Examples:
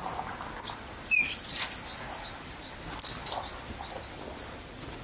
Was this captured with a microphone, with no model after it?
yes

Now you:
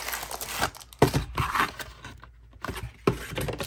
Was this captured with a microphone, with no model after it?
yes